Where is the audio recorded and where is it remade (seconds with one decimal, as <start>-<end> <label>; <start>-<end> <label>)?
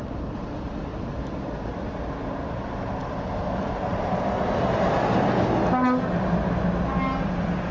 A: 0.0-0.9 recorded; 0.9-1.8 remade; 1.8-7.7 recorded